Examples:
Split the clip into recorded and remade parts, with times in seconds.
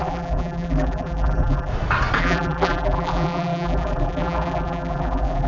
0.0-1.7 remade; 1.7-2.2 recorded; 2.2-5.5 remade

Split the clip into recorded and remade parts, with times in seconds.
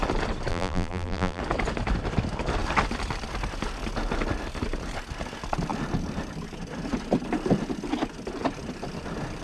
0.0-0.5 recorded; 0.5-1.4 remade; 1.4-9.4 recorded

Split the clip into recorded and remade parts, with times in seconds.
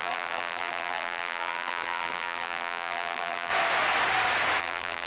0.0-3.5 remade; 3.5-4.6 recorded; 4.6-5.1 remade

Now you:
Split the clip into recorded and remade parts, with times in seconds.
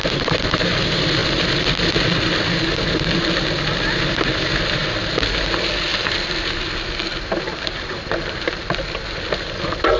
0.0-10.0 recorded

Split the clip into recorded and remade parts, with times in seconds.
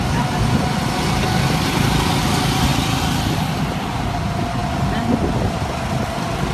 0.0-6.5 recorded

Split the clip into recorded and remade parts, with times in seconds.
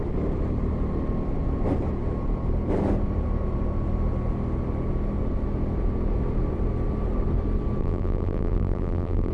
0.0-7.8 recorded; 7.8-9.3 remade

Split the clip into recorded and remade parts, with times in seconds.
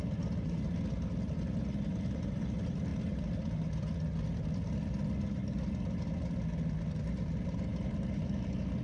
0.0-8.8 recorded